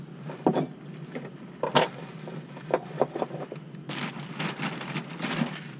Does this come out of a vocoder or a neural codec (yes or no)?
no